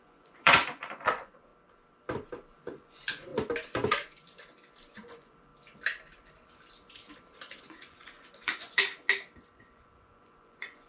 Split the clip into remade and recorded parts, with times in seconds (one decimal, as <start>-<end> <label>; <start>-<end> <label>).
0.0-1.5 remade; 1.5-2.6 recorded; 2.6-3.3 remade; 3.3-4.9 recorded; 4.9-5.5 remade; 5.5-7.6 recorded; 7.6-8.9 remade; 8.9-9.5 recorded; 9.5-10.9 remade